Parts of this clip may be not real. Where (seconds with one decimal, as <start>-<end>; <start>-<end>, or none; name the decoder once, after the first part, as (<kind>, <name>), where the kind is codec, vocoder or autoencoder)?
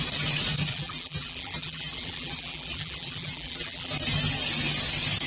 0.7-3.9 (vocoder, BigVGAN v2)